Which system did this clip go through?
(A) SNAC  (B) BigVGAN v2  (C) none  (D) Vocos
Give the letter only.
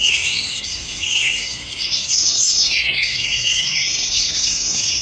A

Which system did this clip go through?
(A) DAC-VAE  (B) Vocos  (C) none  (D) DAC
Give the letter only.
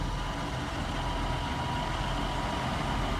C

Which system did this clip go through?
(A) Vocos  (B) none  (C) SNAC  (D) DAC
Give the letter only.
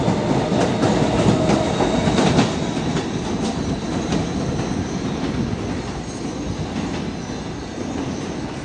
B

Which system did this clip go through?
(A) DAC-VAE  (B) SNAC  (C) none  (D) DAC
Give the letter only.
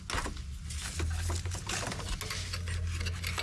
C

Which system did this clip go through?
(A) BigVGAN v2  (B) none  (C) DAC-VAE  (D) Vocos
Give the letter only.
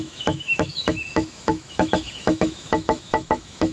C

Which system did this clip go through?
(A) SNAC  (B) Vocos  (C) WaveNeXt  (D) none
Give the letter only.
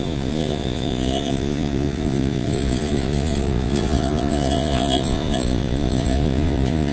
B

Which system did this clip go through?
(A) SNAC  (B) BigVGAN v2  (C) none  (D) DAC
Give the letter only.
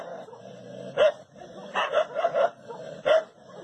C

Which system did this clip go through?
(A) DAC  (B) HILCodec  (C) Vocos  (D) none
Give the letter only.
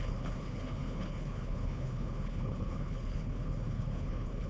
B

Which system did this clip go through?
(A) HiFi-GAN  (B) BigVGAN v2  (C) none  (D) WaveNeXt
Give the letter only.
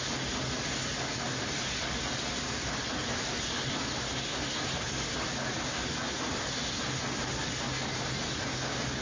C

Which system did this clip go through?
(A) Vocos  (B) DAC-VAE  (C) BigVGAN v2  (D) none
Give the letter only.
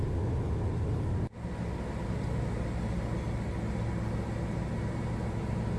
D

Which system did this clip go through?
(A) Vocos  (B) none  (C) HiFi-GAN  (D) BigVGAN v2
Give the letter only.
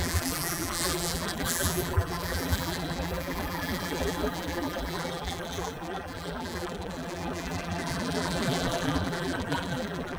D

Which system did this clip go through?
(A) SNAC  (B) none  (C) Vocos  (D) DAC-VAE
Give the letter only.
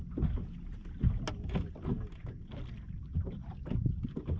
B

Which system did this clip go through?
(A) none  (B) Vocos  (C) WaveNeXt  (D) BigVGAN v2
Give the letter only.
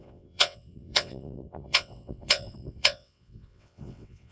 C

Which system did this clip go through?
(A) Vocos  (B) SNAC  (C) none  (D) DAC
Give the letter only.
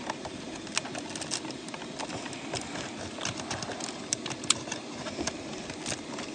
C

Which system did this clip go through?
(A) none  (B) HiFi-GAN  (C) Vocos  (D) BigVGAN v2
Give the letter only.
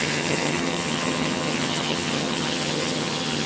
B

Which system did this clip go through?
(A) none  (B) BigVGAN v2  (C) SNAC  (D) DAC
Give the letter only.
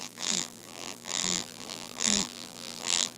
B